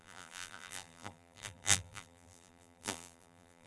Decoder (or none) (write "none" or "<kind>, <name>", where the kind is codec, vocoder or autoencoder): vocoder, BigVGAN v2